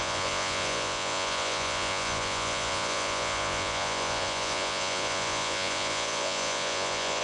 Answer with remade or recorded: remade